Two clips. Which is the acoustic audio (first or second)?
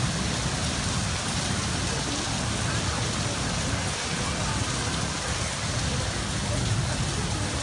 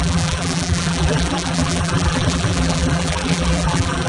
first